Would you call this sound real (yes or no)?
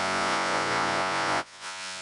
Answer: no